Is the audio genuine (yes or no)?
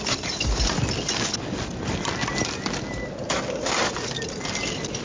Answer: yes